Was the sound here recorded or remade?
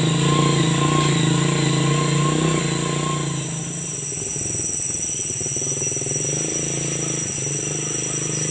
recorded